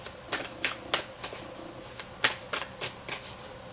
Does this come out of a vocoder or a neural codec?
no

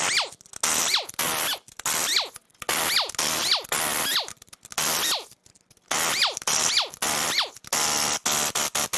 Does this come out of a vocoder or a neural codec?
no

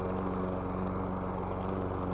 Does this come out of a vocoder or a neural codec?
no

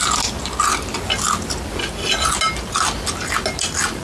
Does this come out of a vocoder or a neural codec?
no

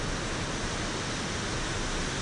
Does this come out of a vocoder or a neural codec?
no